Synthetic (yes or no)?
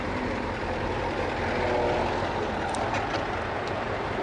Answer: no